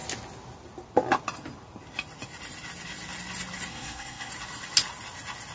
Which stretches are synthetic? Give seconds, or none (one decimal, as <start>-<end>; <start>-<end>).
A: 3.7-4.3